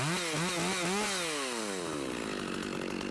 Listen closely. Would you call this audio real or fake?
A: real